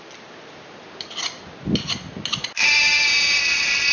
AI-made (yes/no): no